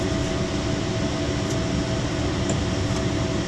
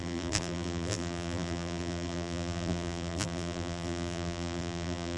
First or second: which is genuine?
first